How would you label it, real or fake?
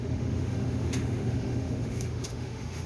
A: fake